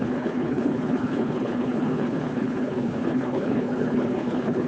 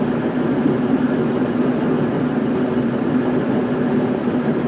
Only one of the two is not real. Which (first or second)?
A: first